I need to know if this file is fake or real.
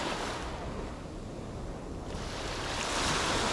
real